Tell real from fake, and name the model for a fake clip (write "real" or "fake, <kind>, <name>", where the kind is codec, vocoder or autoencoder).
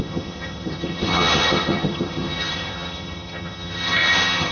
fake, vocoder, HiFi-GAN